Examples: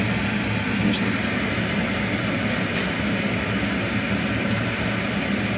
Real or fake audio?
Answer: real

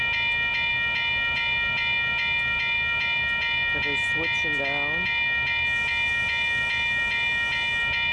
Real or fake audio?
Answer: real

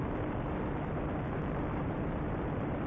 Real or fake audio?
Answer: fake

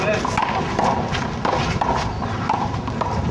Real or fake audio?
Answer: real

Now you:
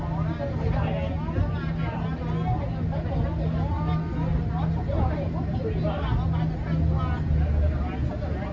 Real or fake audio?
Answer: real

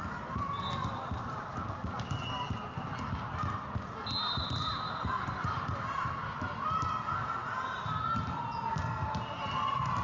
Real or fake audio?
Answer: real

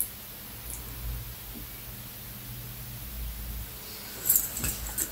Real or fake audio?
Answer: real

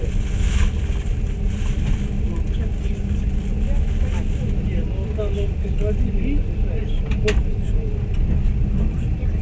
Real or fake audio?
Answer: real